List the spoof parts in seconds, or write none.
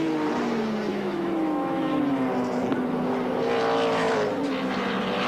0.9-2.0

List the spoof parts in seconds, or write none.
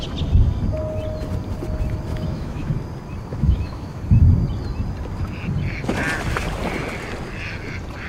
2.1-2.7; 3.3-4.0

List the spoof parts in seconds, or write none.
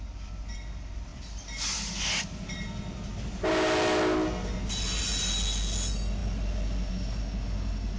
none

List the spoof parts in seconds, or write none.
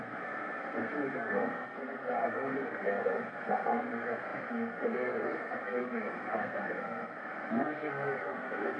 0.0-8.8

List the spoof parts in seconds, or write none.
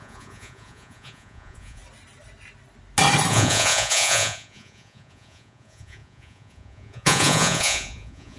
0.0-1.8; 3.3-8.4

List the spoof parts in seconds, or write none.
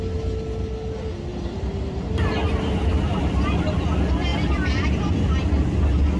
1.3-3.6; 4.3-5.3